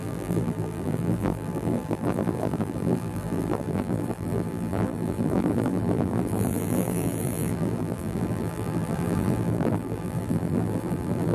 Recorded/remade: remade